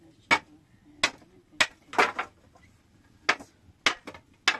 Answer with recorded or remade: recorded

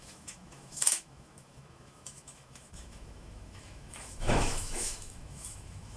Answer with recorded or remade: remade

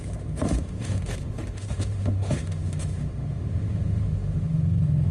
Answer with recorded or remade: remade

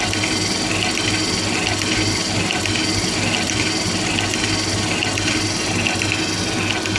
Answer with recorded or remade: recorded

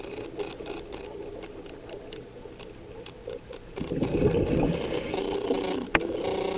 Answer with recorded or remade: recorded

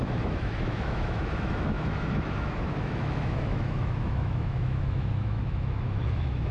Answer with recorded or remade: remade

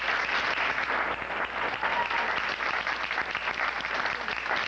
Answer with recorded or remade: recorded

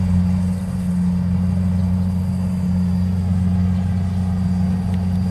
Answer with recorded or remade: recorded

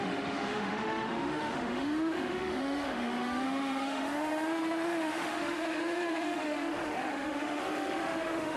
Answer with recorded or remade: remade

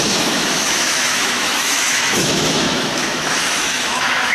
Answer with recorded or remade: remade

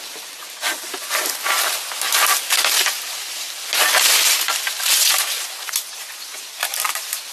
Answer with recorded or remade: recorded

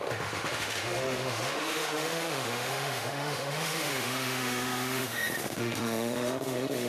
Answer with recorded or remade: remade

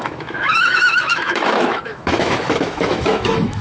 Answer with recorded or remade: remade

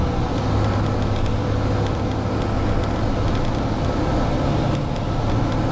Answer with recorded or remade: recorded